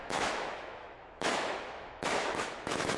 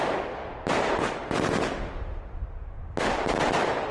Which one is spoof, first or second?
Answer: first